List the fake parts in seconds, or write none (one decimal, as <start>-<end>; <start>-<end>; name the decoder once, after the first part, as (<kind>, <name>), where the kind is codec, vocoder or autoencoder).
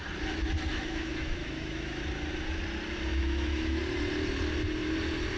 0.7-2.0 (autoencoder, DAC-VAE); 3.1-3.8